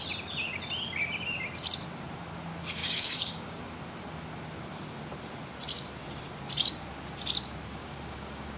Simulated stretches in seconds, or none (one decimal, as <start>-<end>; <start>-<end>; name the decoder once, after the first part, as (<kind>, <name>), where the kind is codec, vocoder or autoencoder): 2.8-3.6 (codec, DAC); 7.8-8.6